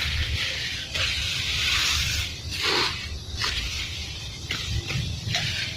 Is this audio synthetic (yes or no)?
no